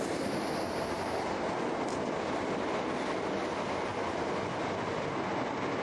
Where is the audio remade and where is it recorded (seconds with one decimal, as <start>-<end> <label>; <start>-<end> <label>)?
0.0-5.8 recorded